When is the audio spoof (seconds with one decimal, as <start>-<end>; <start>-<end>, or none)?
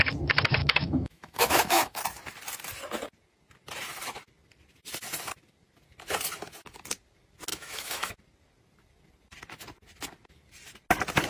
0.6-2.0; 7.5-8.1